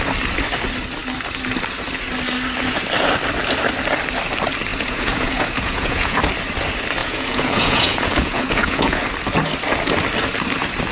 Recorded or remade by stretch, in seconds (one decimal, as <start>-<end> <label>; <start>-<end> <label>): 0.0-4.7 recorded; 4.7-6.2 remade; 6.2-7.0 recorded; 7.0-9.0 remade; 9.0-10.9 recorded